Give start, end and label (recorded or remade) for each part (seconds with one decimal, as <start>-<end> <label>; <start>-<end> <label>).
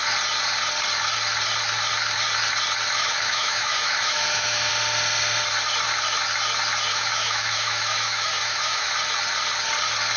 0.0-3.0 recorded; 3.0-4.7 remade; 4.7-6.9 recorded; 6.9-8.9 remade; 8.9-10.2 recorded